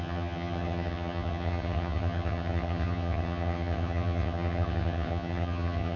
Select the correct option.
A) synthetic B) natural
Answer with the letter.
A